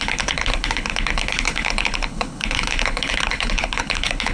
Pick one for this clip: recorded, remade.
remade